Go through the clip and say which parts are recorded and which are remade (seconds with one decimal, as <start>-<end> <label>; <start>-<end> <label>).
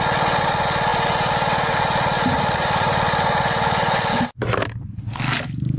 0.0-5.8 recorded